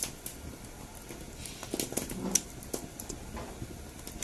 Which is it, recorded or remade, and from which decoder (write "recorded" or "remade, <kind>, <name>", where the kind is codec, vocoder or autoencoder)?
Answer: recorded